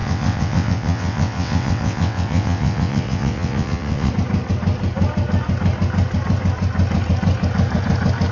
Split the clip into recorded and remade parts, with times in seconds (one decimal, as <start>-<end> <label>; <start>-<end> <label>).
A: 0.0-4.1 remade; 4.1-8.3 recorded